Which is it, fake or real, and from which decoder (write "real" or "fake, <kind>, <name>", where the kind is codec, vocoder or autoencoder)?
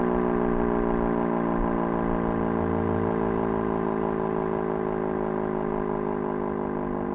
real